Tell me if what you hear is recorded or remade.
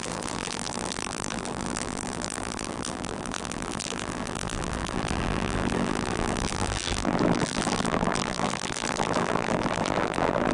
remade